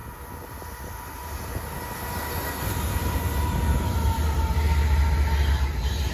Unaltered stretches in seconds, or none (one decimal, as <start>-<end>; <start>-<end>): 0.0-6.1

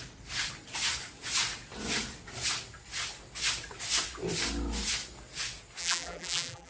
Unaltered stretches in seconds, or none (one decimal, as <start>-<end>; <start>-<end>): 0.0-5.8

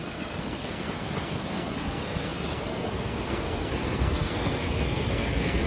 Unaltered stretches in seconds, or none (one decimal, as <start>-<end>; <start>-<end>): none

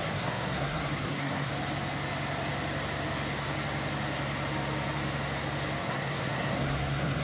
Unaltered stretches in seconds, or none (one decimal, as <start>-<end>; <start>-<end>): 1.5-5.8

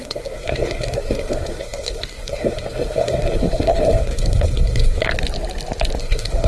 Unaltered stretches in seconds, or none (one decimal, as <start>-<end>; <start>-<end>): 5.1-6.0